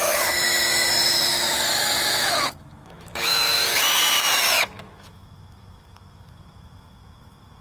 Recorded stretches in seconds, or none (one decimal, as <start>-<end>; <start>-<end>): none